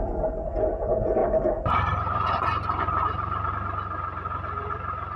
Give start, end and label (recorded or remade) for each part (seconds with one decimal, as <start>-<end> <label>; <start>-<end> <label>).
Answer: 0.0-1.2 recorded; 1.2-3.5 remade; 3.5-5.2 recorded